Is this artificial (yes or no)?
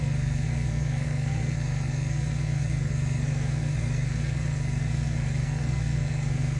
yes